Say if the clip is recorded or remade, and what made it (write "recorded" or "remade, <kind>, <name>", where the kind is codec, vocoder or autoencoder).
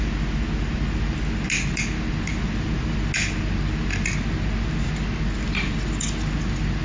recorded